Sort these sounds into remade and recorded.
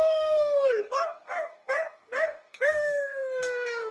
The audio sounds remade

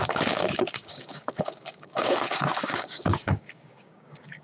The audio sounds remade